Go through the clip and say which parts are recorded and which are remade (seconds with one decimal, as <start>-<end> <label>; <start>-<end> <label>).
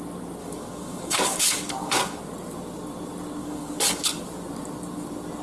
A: 0.0-0.4 recorded; 0.4-2.2 remade; 2.2-3.4 recorded; 3.4-4.2 remade; 4.2-5.4 recorded